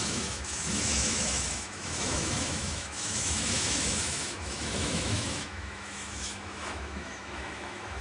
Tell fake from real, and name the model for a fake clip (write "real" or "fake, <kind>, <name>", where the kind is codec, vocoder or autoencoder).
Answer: fake, autoencoder, DAC-VAE